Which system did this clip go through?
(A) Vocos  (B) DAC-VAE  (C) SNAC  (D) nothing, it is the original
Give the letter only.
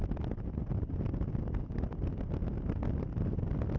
D